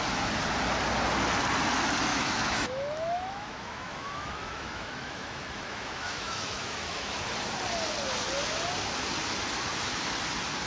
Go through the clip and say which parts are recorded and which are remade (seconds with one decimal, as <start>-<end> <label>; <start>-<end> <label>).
0.0-2.1 recorded; 2.1-7.2 remade; 7.2-10.7 recorded